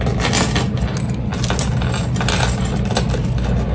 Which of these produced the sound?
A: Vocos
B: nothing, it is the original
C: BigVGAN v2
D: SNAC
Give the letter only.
B